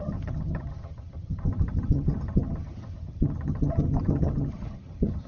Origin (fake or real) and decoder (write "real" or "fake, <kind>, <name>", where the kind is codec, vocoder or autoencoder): fake, vocoder, HiFi-GAN